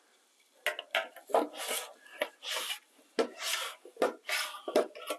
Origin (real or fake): real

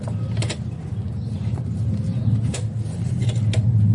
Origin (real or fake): real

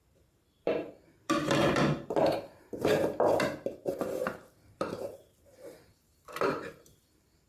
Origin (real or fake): fake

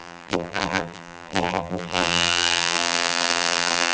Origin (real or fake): fake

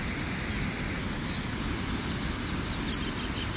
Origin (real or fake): real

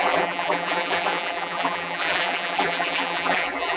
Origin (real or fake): fake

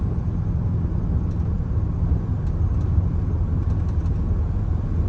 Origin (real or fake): real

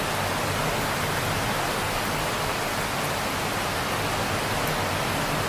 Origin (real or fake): real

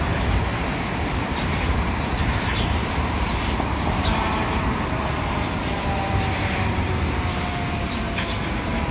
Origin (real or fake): fake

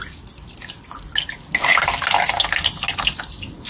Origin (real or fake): real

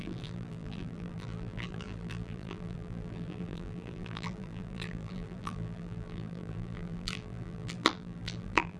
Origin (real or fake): fake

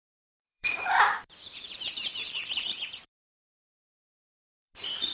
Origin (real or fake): fake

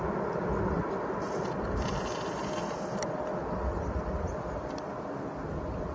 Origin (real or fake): real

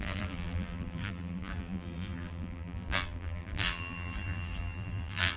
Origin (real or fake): fake